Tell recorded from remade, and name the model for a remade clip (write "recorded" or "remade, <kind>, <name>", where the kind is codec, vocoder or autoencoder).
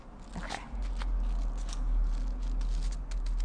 recorded